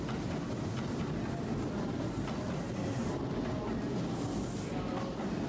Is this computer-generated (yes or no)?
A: no